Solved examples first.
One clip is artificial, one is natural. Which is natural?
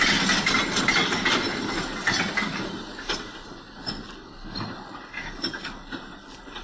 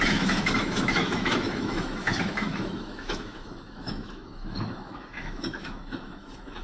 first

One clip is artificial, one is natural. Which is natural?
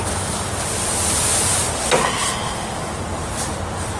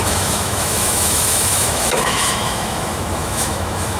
first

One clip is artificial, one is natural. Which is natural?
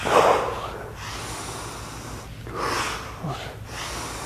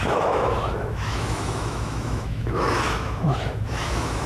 first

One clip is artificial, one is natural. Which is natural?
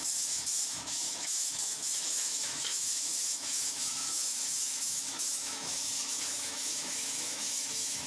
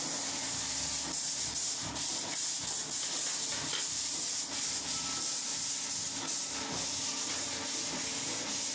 second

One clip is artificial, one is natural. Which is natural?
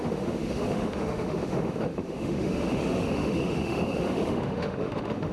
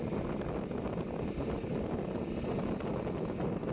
second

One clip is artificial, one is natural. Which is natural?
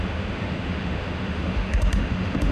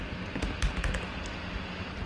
second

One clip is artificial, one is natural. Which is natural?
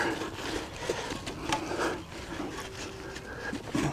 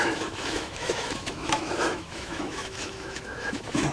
first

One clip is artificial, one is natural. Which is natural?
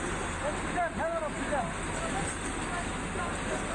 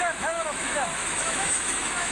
first